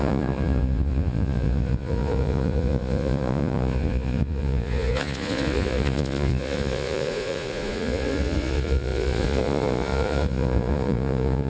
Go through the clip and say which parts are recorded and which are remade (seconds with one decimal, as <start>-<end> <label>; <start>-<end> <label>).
0.0-11.5 remade